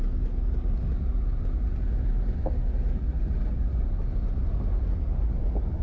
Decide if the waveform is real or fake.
real